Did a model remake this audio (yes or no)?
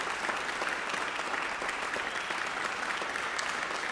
no